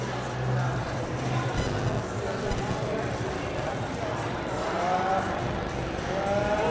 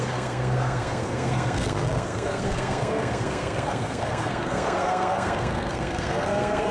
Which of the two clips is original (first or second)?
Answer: first